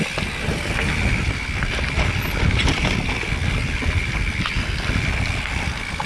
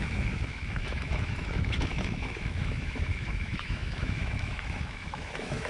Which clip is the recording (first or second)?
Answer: first